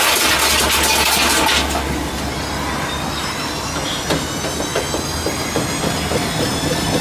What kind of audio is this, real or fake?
real